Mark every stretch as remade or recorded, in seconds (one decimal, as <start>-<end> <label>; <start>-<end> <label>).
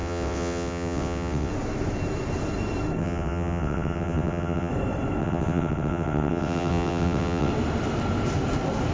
0.0-1.5 remade; 1.5-3.0 recorded; 3.0-4.7 remade; 4.7-5.2 recorded; 5.2-7.5 remade; 7.5-8.9 recorded